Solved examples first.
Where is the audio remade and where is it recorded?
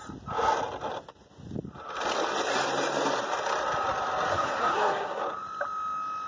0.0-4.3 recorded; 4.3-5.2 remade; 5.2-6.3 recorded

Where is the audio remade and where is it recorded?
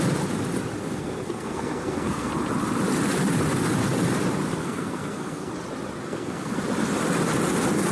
0.0-0.8 recorded; 0.8-2.3 remade; 2.3-4.6 recorded; 4.6-5.5 remade; 5.5-6.0 recorded; 6.0-6.6 remade; 6.6-7.9 recorded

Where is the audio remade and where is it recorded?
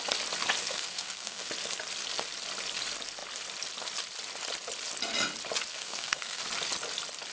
0.0-0.6 recorded; 0.6-1.5 remade; 1.5-5.7 recorded; 5.7-6.4 remade; 6.4-7.3 recorded